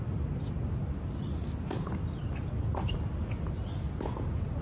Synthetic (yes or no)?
no